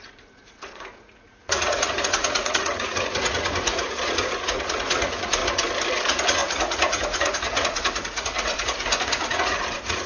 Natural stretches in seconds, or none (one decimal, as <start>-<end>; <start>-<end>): 5.4-5.9